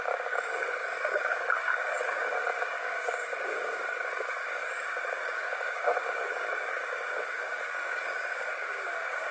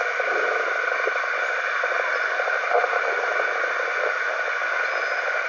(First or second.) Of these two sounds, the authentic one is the second